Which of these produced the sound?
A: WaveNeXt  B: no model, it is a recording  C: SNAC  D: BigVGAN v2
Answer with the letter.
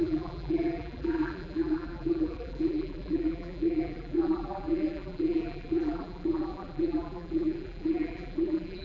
D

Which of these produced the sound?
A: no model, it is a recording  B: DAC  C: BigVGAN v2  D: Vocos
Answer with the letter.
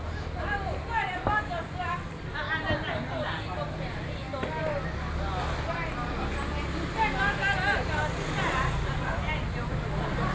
A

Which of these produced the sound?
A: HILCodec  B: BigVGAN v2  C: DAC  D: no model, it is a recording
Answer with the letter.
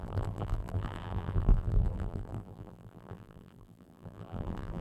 B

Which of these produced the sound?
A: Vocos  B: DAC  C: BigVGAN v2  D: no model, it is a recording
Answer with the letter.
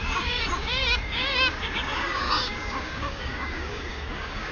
B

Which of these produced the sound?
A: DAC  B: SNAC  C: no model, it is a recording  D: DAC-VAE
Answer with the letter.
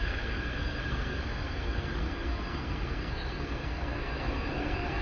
B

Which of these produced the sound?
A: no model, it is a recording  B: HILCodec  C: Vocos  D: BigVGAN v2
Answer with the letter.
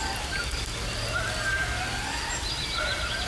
A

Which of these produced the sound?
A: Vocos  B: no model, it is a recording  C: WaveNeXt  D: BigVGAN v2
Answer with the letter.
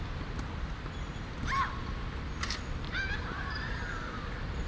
D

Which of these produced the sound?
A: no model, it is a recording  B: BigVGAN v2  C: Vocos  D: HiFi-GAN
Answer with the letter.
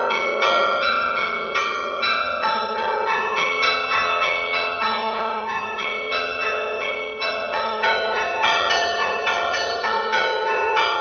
D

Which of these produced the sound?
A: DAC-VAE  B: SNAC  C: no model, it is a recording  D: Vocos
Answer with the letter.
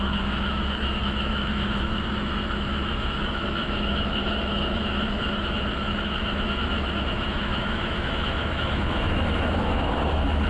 A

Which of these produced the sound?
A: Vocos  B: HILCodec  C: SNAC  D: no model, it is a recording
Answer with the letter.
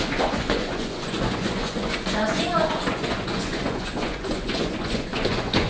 A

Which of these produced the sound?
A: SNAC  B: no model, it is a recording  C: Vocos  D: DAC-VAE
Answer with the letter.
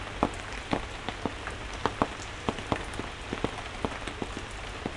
B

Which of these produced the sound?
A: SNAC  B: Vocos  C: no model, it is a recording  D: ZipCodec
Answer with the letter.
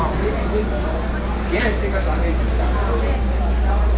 C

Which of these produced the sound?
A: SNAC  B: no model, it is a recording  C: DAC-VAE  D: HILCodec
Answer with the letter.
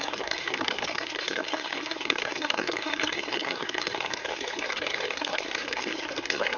A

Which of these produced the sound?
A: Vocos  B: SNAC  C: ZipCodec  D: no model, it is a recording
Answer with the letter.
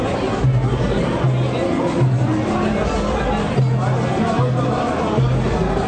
D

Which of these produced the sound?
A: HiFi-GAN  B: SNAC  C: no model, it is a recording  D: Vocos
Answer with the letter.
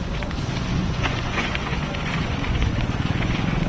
D